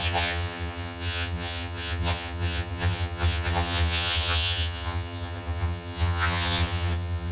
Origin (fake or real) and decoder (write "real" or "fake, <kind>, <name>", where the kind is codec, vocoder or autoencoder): fake, vocoder, HiFi-GAN